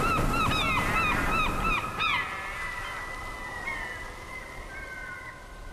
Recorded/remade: recorded